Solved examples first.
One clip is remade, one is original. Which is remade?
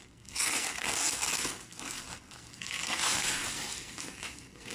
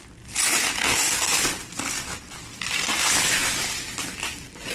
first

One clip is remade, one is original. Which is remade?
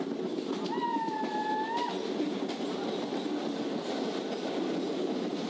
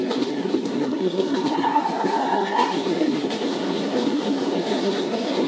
second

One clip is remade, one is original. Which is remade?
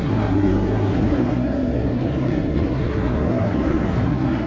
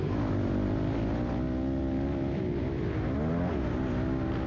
first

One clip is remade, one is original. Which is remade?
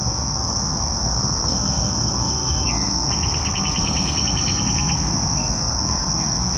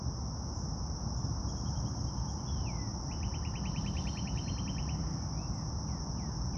first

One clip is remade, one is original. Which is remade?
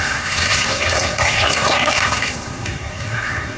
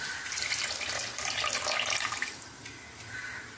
first